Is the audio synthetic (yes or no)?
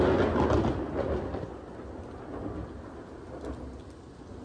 no